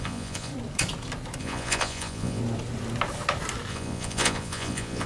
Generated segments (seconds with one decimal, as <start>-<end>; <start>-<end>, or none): 0.0-0.5; 1.4-2.4; 3.7-5.1